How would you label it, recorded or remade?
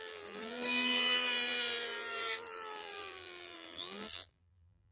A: remade